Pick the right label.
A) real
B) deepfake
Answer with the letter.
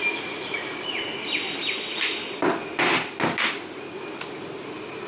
A